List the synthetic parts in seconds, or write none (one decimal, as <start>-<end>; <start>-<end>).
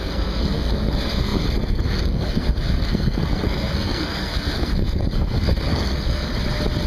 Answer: 0.0-6.3